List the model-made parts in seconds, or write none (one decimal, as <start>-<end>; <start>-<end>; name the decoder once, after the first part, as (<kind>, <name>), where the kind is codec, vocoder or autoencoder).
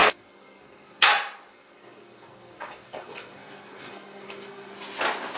0.0-1.1 (codec, SNAC); 1.5-4.7